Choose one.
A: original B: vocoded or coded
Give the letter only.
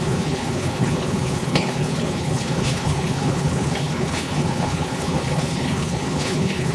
B